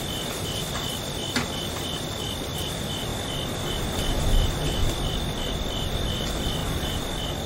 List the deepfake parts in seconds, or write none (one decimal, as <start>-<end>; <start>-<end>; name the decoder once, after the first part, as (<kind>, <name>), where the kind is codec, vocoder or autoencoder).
none